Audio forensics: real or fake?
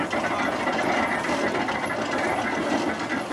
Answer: real